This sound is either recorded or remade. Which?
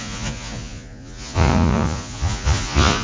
remade